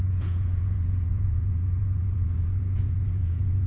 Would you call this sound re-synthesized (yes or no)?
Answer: yes